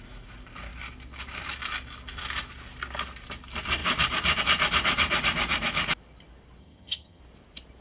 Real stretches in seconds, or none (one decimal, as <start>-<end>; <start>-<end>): 0.0-6.6; 7.2-7.8